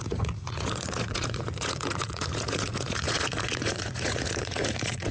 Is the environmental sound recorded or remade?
remade